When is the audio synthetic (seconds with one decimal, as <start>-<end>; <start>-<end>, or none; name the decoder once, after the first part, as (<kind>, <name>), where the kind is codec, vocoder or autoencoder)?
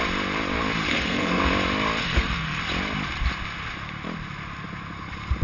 0.9-1.4 (codec, SNAC); 2.0-2.6